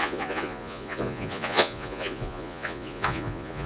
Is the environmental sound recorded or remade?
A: remade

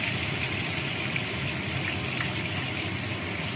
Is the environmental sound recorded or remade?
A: recorded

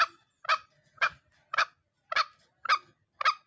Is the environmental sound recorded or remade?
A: recorded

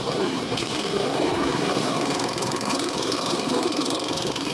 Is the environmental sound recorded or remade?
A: remade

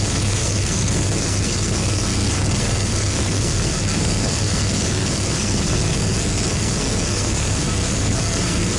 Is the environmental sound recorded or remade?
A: remade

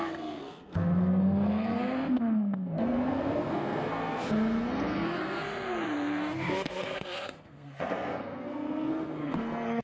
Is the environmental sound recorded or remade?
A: remade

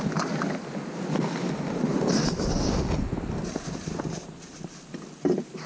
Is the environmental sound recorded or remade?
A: recorded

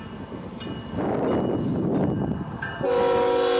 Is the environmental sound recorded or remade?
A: recorded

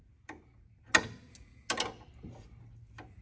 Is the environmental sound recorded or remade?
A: recorded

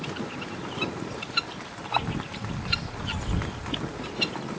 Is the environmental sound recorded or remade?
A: recorded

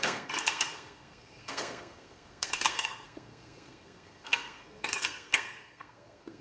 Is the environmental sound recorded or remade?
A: remade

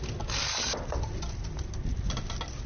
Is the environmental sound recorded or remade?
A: recorded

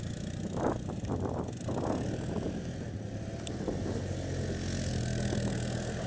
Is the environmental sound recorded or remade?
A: recorded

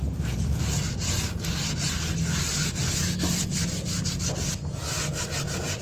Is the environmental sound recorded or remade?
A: recorded